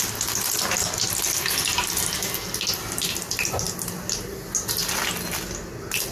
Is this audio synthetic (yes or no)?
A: no